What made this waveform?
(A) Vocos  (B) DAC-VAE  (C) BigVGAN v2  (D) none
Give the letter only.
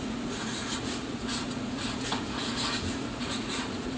A